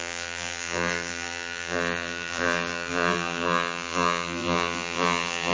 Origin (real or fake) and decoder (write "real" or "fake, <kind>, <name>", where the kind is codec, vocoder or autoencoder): fake, vocoder, BigVGAN v2